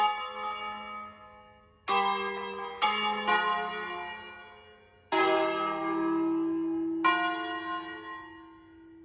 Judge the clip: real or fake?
real